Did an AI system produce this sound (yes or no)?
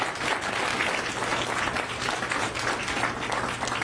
no